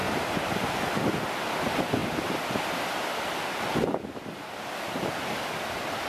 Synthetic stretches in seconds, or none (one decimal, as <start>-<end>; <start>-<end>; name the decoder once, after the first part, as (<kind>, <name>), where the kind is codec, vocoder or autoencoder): none